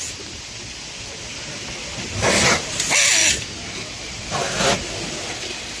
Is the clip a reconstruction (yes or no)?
no